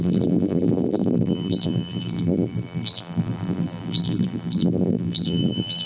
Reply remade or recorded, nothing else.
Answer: remade